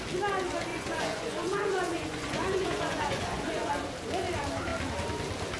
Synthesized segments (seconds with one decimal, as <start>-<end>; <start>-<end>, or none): 0.7-3.7